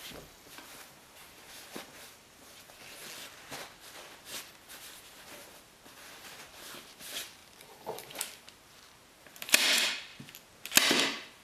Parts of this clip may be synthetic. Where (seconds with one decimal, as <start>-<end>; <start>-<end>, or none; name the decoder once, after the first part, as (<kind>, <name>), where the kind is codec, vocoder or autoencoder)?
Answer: 0.0-3.0 (vocoder, BigVGAN v2); 4.5-10.1; 10.8-11.4